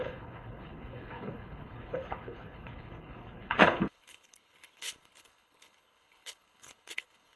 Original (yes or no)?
no